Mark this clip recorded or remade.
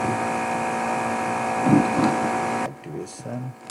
recorded